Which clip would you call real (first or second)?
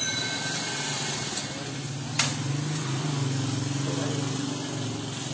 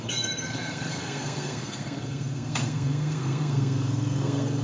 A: first